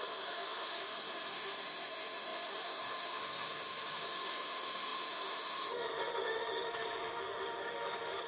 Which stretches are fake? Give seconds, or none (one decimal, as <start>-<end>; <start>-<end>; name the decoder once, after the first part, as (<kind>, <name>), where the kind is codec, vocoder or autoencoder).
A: 0.0-8.3 (autoencoder, DAC-VAE)

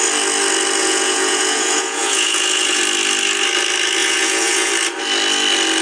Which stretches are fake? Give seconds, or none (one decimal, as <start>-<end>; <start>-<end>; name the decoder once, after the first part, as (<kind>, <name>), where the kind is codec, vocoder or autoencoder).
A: 0.8-2.8 (vocoder, Vocos); 4.0-4.7

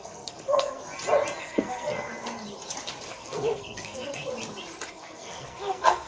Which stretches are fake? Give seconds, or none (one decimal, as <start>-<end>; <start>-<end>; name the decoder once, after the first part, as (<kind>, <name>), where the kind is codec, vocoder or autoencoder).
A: 0.0-0.8 (codec, SNAC); 1.4-2.1; 3.1-4.2; 4.9-6.1

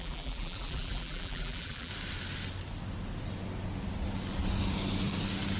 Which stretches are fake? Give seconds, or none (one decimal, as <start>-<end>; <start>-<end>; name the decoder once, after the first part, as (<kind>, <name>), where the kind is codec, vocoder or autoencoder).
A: 0.0-1.9 (vocoder, BigVGAN v2)

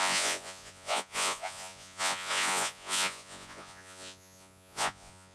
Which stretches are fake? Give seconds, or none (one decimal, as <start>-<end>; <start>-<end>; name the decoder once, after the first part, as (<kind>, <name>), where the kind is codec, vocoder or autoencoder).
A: 0.0-5.3 (vocoder, Vocos)

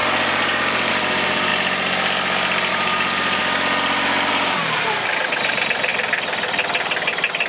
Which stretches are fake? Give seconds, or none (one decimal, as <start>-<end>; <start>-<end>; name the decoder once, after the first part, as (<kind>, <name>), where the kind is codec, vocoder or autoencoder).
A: 0.0-1.5 (vocoder, BigVGAN v2); 2.7-3.4; 4.3-5.9

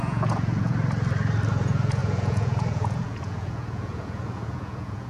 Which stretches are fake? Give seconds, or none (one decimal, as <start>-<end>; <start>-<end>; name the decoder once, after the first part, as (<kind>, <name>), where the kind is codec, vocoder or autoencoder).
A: 0.0-0.7 (vocoder, Vocos); 1.5-5.1

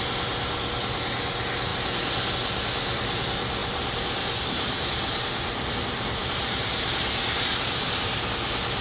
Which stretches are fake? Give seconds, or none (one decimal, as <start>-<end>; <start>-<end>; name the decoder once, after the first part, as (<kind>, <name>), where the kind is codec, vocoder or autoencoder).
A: 3.6-5.7 (vocoder, BigVGAN v2); 6.2-8.1